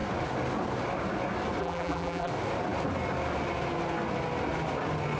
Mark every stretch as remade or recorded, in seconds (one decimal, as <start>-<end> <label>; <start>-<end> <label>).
0.0-1.6 recorded; 1.6-2.3 remade; 2.3-5.2 recorded